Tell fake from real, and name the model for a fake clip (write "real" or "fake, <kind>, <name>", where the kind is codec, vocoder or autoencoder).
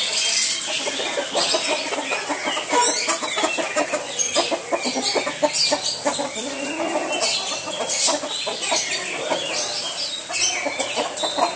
real